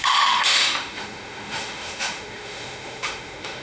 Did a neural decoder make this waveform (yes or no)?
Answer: yes